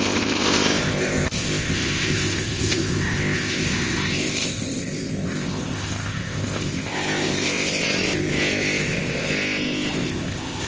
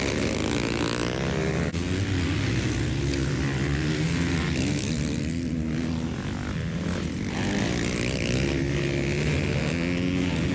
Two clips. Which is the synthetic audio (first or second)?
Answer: first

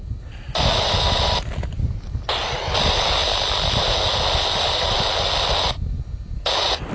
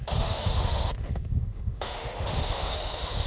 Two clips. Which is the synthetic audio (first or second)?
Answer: second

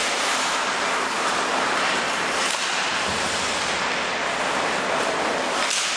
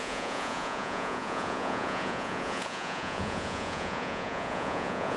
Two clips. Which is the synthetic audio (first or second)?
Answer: second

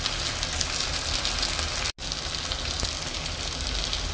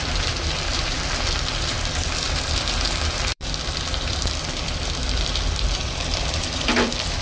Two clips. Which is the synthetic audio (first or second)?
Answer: second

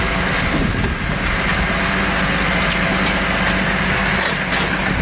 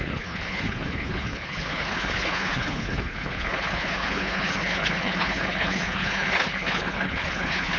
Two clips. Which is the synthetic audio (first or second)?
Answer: second